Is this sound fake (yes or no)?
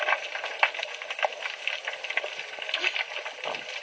no